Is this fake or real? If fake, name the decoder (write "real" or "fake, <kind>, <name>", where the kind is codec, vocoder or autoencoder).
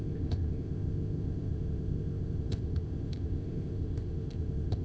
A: fake, codec, ZipCodec